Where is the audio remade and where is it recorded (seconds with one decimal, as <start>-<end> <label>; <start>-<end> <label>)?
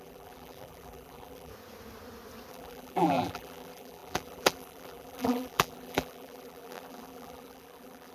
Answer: 0.0-1.5 remade; 1.5-2.5 recorded; 2.5-8.1 remade